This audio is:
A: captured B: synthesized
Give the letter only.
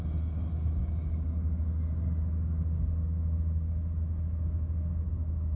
A